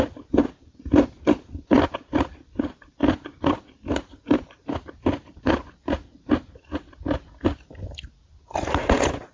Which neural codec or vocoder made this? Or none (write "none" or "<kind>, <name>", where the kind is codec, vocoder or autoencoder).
none